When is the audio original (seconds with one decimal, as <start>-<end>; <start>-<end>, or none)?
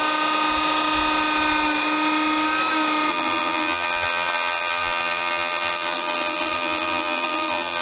0.0-3.1